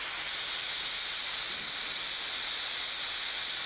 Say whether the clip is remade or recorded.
recorded